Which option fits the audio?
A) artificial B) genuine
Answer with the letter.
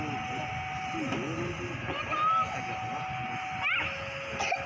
B